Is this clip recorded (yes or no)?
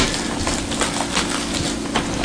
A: yes